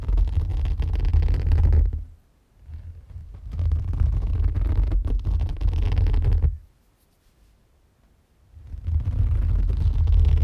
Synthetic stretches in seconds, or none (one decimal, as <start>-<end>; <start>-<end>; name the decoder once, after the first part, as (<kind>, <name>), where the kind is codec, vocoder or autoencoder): none